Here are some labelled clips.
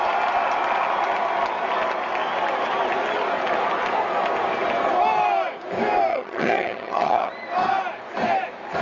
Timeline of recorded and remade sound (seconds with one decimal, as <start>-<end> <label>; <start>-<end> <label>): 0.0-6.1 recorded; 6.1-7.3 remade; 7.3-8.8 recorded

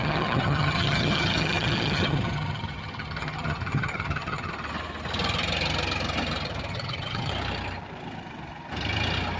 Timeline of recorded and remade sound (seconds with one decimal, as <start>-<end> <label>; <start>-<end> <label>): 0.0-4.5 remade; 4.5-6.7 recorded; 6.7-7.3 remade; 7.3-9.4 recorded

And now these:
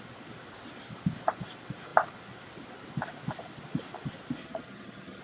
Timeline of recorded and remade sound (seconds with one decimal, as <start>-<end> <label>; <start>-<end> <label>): 0.0-4.4 recorded; 4.4-5.2 remade

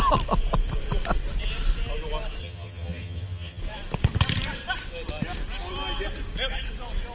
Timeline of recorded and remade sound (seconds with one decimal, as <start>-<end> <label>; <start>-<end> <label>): 0.0-2.4 recorded; 2.4-3.6 remade; 3.6-7.1 recorded